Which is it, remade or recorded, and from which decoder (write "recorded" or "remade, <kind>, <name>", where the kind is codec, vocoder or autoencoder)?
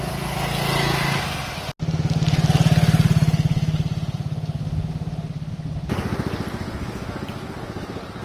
recorded